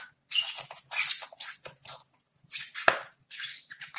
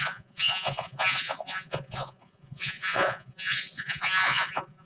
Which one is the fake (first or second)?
second